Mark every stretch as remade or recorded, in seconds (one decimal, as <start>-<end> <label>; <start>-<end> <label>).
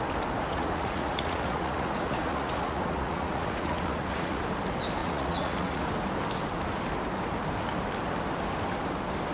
0.0-0.5 recorded; 0.5-4.4 remade; 4.4-5.0 recorded; 5.0-5.8 remade; 5.8-9.3 recorded